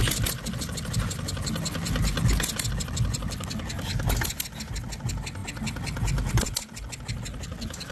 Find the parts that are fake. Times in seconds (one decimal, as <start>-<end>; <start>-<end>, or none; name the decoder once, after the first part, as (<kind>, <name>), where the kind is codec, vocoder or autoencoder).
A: none